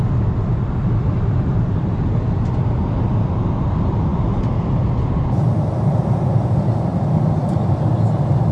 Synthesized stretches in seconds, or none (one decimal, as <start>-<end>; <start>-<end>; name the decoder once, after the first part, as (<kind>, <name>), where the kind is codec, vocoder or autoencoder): 1.1-1.8 (vocoder, BigVGAN v2)